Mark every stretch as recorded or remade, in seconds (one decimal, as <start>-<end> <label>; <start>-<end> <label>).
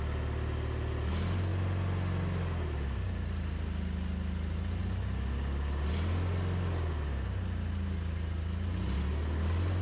0.0-9.8 recorded